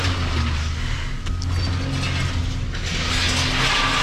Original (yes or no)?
yes